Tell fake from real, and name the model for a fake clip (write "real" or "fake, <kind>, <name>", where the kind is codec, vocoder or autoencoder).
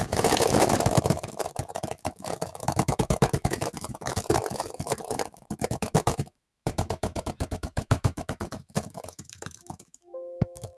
fake, autoencoder, DAC-VAE